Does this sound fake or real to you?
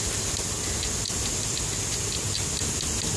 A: real